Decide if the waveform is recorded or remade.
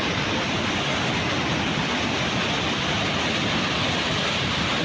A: recorded